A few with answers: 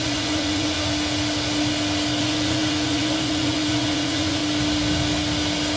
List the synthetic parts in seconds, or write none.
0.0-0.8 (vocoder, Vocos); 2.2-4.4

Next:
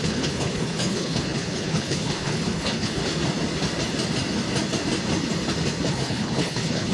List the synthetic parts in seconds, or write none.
0.0-3.0 (codec, HILCodec); 5.9-6.9

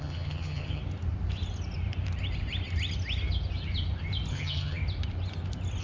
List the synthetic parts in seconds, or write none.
0.0-0.8 (vocoder, HiFi-GAN); 4.3-4.8

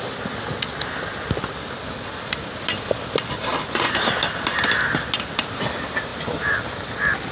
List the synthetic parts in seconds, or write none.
none

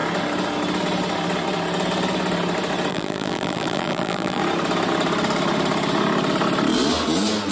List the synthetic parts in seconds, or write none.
2.9-4.4 (vocoder, BigVGAN v2)

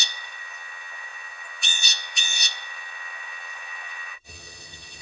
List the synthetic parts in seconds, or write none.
0.0-5.0 (vocoder, HiFi-GAN)

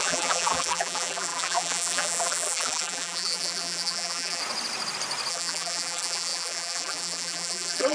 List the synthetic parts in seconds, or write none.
0.0-4.4 (vocoder, BigVGAN v2); 5.3-7.9

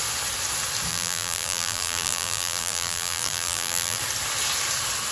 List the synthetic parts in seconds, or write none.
0.9-4.0 (vocoder, BigVGAN v2)